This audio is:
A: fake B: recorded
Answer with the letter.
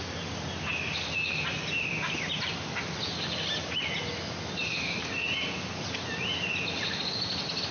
B